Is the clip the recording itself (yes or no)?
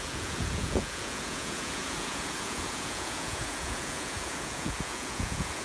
no